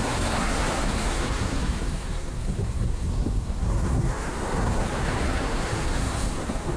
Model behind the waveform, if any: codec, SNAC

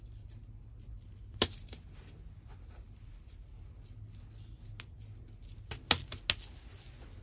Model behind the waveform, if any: none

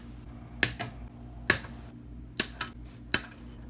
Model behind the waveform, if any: none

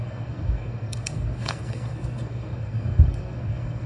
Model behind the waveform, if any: codec, SNAC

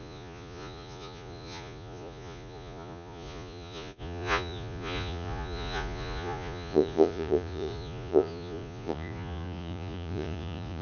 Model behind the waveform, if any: vocoder, Vocos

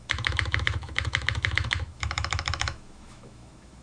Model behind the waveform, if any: autoencoder, DAC-VAE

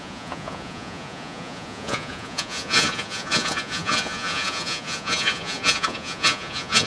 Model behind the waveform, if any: vocoder, Vocos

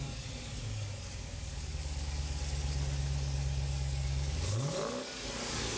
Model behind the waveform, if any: codec, DAC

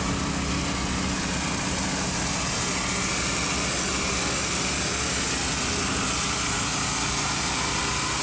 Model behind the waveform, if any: none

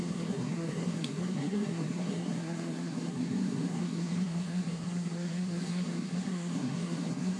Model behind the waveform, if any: codec, SNAC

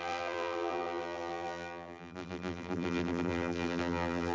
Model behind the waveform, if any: vocoder, BigVGAN v2